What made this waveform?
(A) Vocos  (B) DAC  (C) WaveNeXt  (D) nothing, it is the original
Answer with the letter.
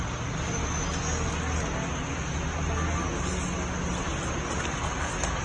D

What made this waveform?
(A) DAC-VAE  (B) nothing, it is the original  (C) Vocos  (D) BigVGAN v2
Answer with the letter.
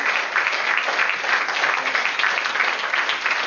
B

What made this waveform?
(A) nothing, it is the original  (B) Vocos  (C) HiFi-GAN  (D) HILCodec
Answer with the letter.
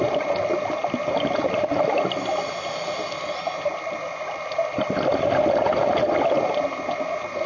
A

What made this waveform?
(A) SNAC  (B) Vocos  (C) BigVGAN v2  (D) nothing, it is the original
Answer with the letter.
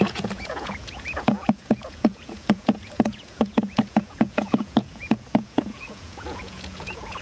B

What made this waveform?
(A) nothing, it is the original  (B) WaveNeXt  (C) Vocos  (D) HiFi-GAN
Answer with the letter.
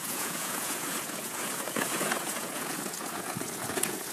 C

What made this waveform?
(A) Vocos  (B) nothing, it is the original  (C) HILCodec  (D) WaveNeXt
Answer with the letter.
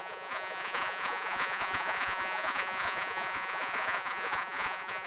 A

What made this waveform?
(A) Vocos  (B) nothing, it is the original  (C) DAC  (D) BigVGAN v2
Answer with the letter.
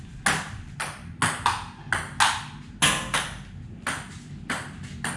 B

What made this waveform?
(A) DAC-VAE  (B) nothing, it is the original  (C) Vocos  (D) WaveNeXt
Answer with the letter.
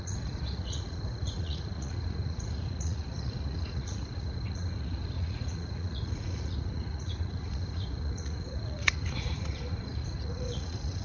C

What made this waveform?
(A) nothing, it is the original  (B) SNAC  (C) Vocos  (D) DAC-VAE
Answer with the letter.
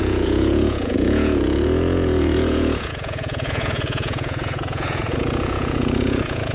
C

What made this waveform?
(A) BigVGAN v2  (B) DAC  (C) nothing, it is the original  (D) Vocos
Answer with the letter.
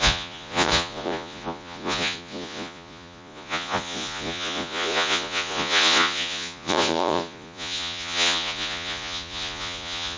D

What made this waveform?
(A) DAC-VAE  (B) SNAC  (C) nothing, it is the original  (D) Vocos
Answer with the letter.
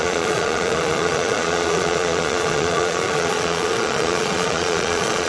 D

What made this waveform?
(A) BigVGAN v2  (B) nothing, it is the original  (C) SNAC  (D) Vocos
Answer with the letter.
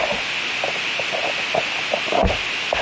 B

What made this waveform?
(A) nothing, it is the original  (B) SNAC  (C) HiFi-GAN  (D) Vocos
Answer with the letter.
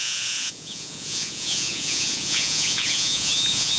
D